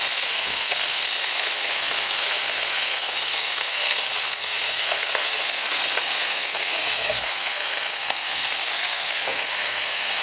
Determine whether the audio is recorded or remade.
remade